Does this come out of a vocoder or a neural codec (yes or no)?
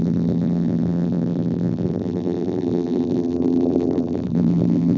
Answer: yes